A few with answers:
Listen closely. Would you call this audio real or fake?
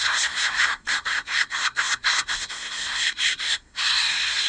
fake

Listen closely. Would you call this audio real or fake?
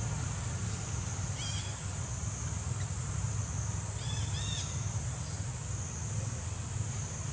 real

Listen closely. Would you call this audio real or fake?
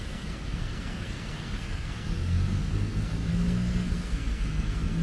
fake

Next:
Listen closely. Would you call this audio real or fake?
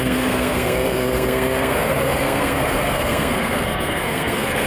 fake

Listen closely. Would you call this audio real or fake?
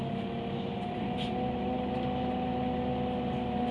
real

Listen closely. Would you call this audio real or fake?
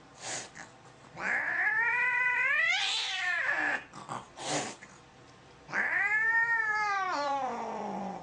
fake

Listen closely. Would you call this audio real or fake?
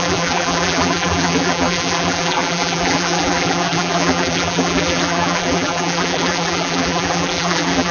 fake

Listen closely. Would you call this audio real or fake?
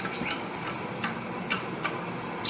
real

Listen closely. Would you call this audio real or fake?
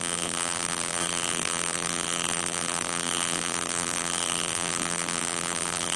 fake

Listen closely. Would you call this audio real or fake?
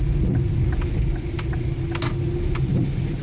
real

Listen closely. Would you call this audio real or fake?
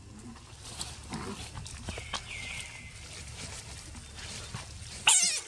real